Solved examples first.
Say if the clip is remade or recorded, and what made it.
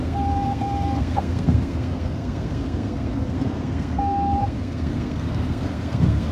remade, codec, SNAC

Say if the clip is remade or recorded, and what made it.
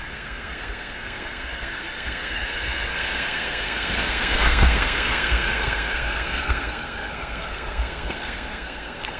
remade, codec, SNAC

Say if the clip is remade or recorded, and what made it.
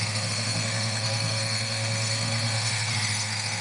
remade, codec, SNAC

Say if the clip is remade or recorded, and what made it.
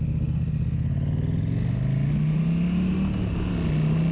recorded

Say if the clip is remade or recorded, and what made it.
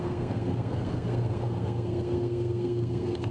remade, codec, SNAC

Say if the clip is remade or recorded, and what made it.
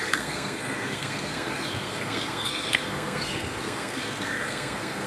remade, codec, SNAC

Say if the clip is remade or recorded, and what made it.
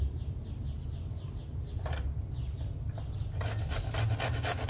recorded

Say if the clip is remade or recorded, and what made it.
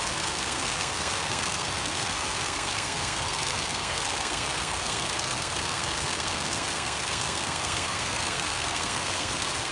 remade, codec, SNAC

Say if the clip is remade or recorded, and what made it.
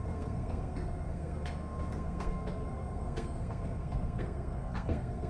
remade, codec, SNAC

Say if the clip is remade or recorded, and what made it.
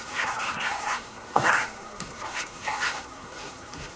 remade, codec, SNAC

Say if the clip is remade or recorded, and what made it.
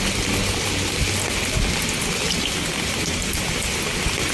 recorded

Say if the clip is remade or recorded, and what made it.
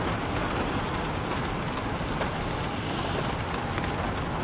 recorded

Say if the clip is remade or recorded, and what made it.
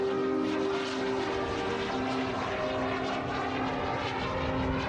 recorded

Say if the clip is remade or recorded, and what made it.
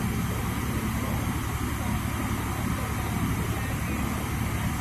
recorded